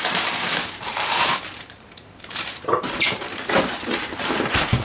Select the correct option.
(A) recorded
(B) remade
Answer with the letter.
B